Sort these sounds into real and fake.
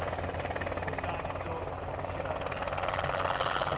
real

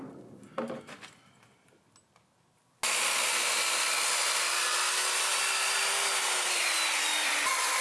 real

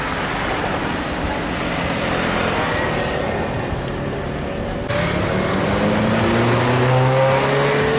real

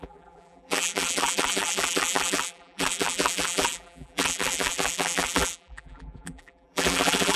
fake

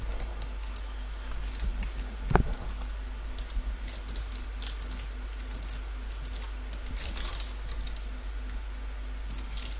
real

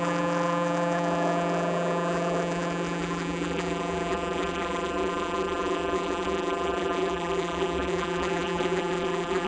fake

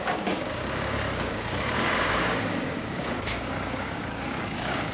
fake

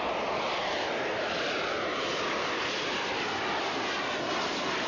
real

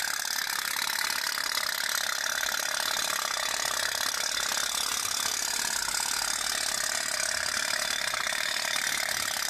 real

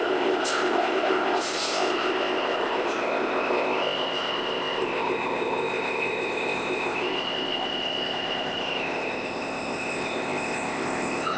fake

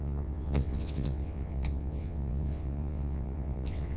fake